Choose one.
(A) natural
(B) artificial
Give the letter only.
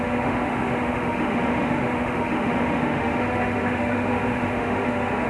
B